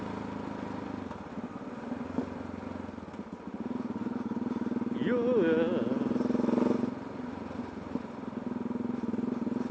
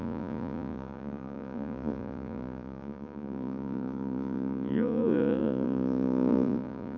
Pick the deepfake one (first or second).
second